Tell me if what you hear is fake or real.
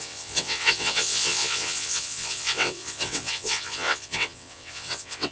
fake